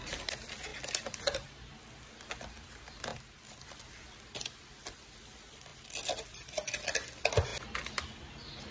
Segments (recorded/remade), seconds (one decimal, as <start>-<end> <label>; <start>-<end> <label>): 0.0-8.7 recorded